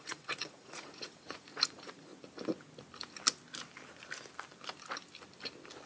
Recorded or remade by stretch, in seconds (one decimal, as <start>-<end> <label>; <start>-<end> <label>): 0.0-2.1 remade; 2.1-5.9 recorded